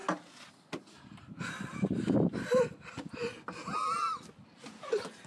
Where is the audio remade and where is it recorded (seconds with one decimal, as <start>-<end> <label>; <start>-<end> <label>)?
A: 0.0-3.2 remade; 3.2-3.8 recorded; 3.8-5.3 remade